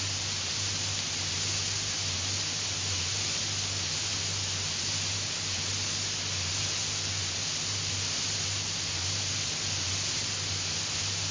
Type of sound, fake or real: real